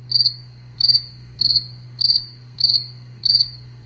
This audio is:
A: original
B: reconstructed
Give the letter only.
B